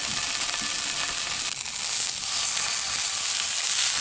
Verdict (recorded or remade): recorded